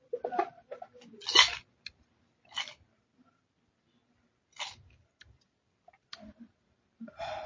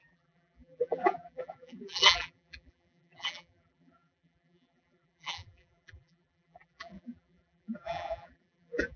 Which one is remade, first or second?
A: second